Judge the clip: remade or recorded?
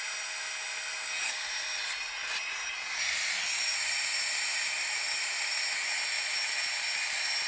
recorded